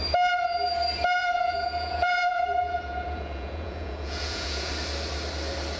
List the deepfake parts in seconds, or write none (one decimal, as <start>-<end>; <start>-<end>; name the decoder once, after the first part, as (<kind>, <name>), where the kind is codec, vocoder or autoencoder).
1.2-4.7 (vocoder, Vocos)